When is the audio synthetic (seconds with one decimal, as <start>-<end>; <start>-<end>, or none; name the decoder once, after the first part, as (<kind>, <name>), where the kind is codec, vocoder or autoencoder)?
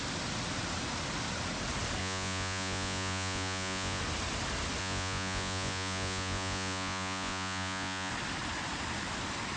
2.0-4.0 (vocoder, Vocos); 4.8-8.1